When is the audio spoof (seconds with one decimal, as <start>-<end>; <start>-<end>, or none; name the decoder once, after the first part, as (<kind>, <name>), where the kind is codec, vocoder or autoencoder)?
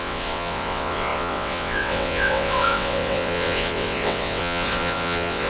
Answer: 0.0-5.5 (vocoder, WaveNeXt)